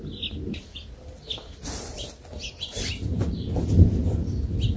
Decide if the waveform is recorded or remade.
recorded